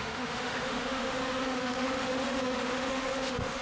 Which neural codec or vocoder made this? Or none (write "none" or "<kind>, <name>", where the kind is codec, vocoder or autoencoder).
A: autoencoder, DAC-VAE